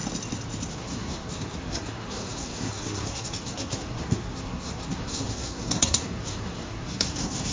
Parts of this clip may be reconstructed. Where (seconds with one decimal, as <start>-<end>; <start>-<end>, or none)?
0.7-7.5